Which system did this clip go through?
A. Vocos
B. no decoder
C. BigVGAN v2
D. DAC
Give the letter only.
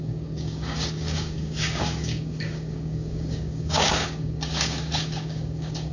D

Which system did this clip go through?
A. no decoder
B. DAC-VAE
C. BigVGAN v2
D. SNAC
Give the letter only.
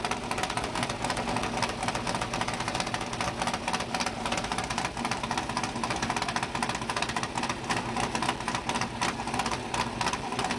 A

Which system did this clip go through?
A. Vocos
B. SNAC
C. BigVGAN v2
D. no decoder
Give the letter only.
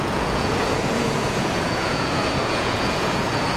A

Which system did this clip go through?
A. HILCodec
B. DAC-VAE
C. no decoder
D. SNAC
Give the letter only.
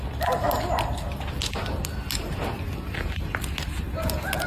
C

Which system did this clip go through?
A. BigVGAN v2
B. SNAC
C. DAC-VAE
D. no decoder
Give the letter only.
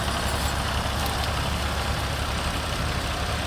D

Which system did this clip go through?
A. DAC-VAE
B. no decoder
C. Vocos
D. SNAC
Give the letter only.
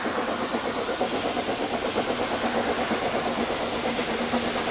B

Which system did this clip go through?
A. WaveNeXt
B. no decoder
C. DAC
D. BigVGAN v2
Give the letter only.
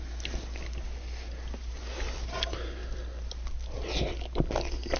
B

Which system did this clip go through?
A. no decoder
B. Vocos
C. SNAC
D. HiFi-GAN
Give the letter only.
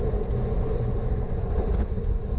B